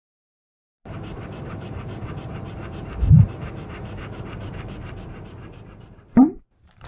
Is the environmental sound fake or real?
fake